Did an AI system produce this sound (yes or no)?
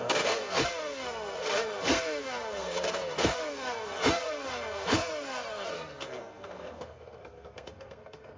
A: yes